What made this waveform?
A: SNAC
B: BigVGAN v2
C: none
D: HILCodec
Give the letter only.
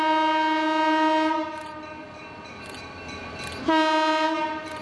C